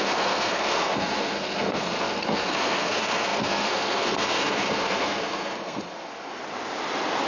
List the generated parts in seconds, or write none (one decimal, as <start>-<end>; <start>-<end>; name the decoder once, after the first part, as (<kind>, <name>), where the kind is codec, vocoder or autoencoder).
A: 0.0-6.4 (codec, SNAC)